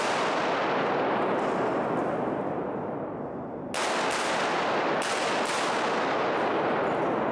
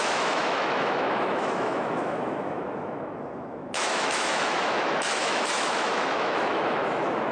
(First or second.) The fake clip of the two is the second